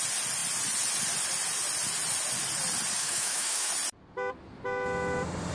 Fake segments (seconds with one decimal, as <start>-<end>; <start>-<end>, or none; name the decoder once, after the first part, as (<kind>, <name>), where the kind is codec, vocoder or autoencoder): 3.0-3.7 (autoencoder, DAC-VAE)